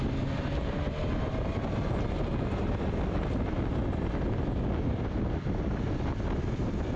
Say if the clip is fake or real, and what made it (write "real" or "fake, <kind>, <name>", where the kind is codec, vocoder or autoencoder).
real